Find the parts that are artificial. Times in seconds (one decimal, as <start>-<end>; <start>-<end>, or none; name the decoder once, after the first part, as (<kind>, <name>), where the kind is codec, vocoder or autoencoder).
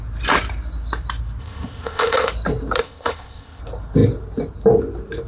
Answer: 1.4-2.3 (codec, ZipCodec); 2.8-3.6